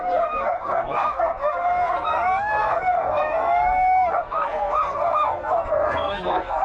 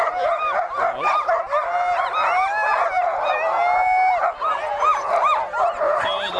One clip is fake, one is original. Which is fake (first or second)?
first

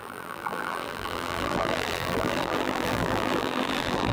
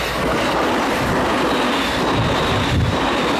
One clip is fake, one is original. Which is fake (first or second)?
first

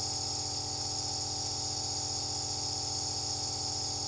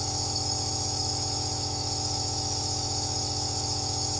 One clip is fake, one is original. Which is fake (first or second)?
second